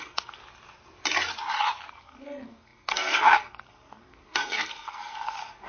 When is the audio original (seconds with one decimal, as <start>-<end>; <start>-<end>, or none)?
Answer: 0.4-1.9